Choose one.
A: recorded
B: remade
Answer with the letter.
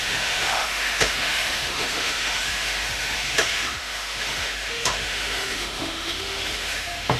B